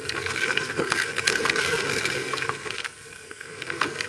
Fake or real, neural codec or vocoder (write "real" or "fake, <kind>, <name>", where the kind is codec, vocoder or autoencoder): fake, codec, SNAC